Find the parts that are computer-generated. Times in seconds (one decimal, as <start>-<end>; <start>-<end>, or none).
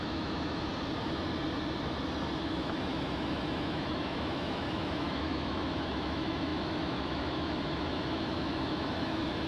0.0-0.7; 2.4-9.5